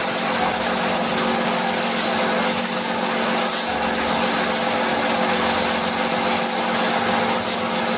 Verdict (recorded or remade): recorded